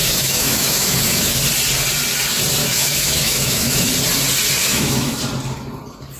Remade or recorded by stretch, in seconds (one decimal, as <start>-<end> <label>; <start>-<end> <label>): 0.0-1.4 remade; 1.4-2.6 recorded; 2.6-3.9 remade; 3.9-4.6 recorded; 4.6-5.2 remade; 5.2-6.2 recorded